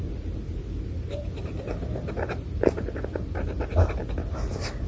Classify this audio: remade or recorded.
recorded